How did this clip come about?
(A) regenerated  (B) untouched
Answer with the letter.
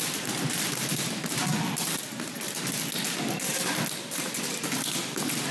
B